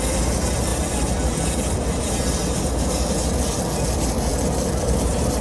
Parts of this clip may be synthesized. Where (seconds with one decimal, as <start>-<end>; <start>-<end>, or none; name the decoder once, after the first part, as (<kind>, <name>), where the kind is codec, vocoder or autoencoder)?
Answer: 0.0-5.4 (vocoder, BigVGAN v2)